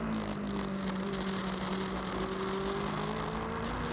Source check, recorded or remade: recorded